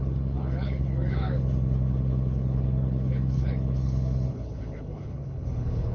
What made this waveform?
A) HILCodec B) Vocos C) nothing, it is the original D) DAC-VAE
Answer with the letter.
A